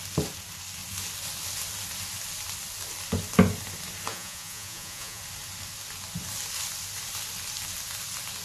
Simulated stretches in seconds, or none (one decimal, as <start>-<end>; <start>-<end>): 4.1-5.2